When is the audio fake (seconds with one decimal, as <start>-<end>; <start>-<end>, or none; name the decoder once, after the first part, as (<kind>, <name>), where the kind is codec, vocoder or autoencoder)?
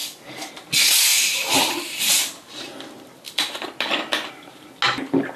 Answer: 0.0-0.5 (codec, DAC)